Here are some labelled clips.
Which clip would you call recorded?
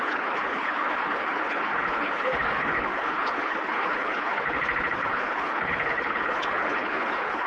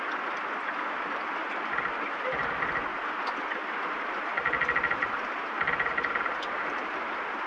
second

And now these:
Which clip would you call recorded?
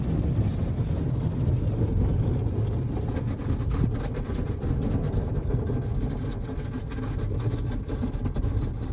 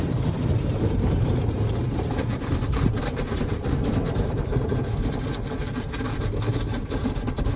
first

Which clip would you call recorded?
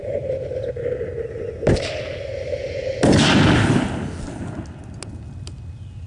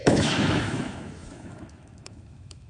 first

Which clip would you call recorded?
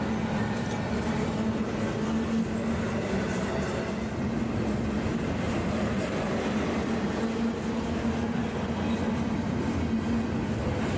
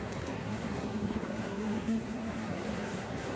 first